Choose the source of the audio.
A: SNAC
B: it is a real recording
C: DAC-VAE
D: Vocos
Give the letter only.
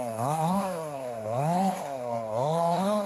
A